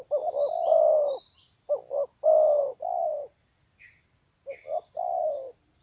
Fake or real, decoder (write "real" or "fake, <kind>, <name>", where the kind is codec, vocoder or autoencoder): real